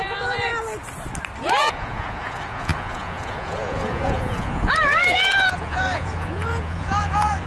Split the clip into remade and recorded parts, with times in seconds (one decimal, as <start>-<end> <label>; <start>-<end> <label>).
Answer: 0.0-0.5 remade; 0.5-1.6 recorded; 1.6-7.5 remade